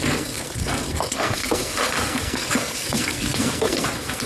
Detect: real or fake fake